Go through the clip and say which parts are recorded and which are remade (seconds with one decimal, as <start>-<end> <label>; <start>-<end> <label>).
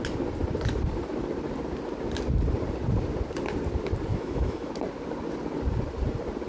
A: 0.0-4.1 recorded; 4.1-4.7 remade; 4.7-6.5 recorded